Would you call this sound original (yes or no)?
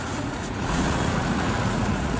no